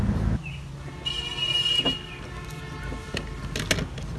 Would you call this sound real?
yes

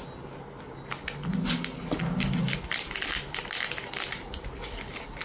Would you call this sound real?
yes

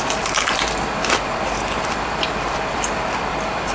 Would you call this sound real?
no